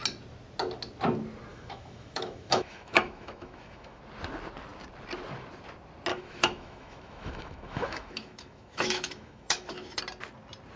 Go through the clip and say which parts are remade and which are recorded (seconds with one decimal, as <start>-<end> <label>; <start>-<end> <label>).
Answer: 0.0-1.5 recorded; 1.5-4.0 remade; 4.0-6.1 recorded; 6.1-10.0 remade; 10.0-10.8 recorded